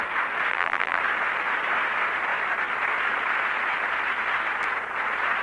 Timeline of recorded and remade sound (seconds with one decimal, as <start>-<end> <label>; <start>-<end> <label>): 0.0-0.5 recorded; 0.5-1.0 remade; 1.0-5.4 recorded